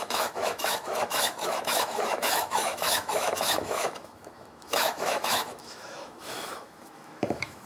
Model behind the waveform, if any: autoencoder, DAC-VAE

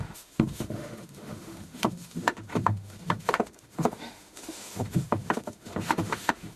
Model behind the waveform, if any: autoencoder, DAC-VAE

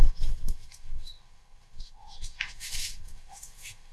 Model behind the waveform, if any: autoencoder, DAC-VAE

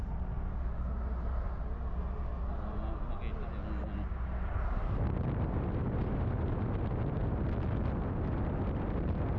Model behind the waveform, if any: none